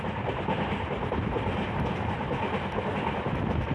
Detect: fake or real real